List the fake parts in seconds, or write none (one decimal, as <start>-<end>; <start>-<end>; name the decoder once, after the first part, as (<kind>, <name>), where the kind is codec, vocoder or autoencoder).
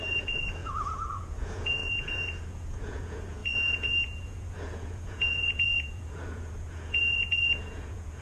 0.0-8.2 (vocoder, Vocos)